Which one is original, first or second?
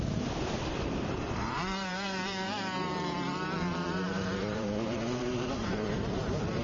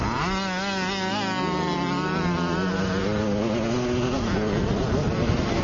second